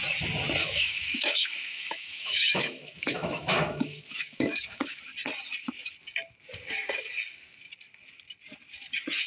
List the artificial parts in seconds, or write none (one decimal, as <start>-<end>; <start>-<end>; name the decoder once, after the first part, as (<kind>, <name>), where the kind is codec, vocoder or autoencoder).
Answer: 0.6-5.0 (autoencoder, DAC-VAE)